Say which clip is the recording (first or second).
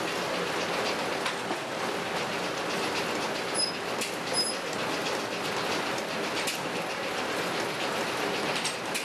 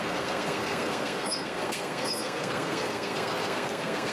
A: first